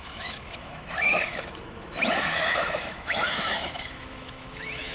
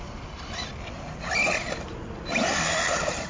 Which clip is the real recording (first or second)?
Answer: second